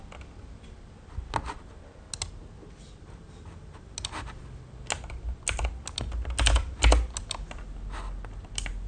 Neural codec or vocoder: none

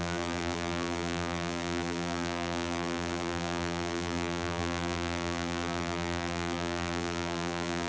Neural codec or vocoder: vocoder, BigVGAN v2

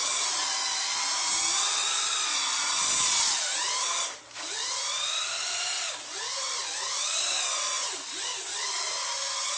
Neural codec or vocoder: none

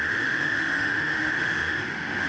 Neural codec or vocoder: autoencoder, DAC-VAE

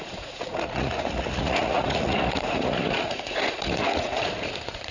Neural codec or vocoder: vocoder, Vocos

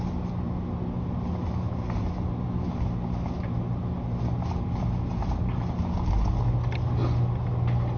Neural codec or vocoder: none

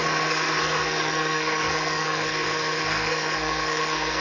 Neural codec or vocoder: codec, SNAC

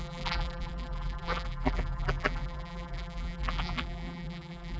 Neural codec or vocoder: vocoder, BigVGAN v2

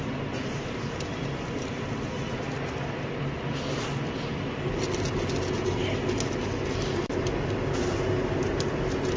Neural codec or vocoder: none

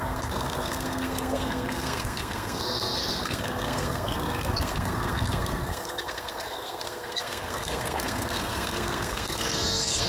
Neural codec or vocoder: codec, SNAC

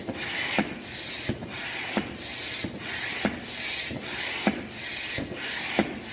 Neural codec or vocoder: none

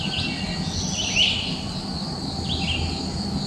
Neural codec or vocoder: none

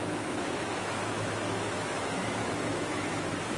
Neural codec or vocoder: autoencoder, DAC-VAE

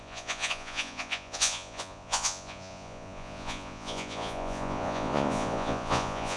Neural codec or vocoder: vocoder, Vocos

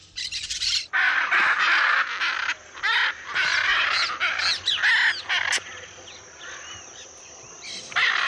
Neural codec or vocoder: none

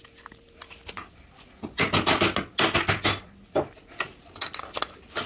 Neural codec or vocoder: none